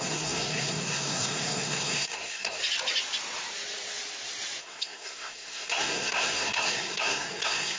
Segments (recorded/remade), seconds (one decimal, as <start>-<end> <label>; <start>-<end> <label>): 0.0-2.6 remade; 2.6-4.6 recorded; 4.6-7.8 remade